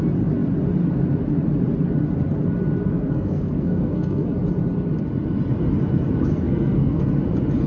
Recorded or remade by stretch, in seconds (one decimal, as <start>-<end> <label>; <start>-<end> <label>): 0.0-2.9 recorded; 2.9-4.3 remade; 4.3-6.3 recorded; 6.3-7.1 remade; 7.1-7.7 recorded